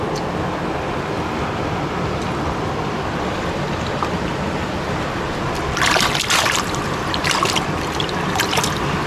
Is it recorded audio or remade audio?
recorded